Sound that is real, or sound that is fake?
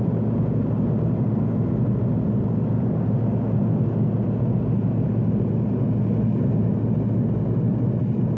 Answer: real